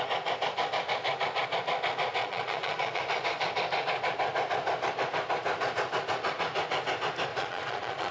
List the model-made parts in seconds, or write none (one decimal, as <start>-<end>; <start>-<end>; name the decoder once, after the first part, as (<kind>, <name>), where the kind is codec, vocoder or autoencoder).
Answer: 2.2-3.0 (vocoder, Vocos); 7.3-8.1